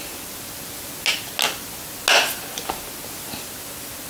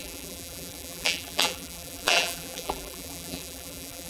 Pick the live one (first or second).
first